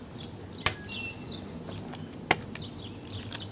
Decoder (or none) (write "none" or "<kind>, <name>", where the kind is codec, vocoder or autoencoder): none